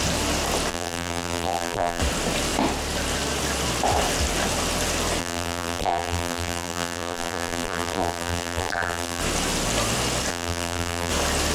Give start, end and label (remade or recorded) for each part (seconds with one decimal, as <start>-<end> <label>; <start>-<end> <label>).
0.0-0.7 recorded; 0.7-2.0 remade; 2.0-5.2 recorded; 5.2-9.2 remade; 9.2-10.3 recorded; 10.3-11.1 remade; 11.1-11.5 recorded